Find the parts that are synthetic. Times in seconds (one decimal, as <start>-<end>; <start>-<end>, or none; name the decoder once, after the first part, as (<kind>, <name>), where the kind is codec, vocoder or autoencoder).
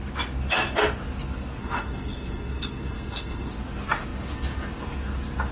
1.6-3.5 (codec, SNAC)